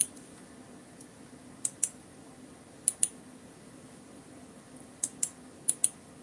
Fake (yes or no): no